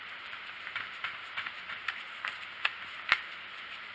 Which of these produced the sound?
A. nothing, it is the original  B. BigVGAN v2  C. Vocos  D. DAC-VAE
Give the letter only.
B